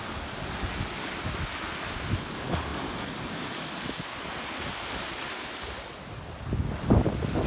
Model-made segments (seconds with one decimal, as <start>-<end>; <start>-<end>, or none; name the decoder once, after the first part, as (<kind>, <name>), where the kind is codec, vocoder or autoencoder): none